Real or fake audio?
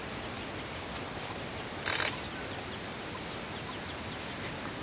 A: real